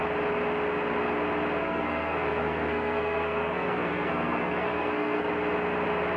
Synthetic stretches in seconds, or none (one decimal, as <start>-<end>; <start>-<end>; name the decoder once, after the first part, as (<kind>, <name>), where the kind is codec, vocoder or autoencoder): 1.6-5.3 (codec, SNAC)